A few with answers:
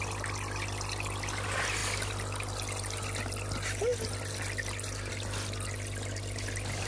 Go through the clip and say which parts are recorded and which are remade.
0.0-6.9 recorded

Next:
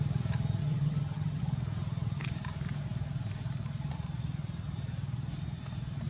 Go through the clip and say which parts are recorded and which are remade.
0.0-0.6 recorded; 0.6-1.4 remade; 1.4-6.1 recorded

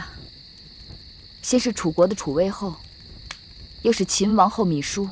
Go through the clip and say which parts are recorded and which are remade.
0.0-0.5 remade; 0.5-2.2 recorded; 2.2-4.3 remade; 4.3-5.1 recorded